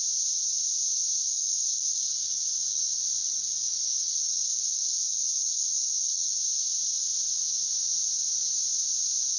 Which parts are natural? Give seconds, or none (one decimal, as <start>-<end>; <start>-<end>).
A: 0.0-1.3; 6.4-9.4